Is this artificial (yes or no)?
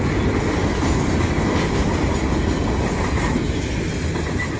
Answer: no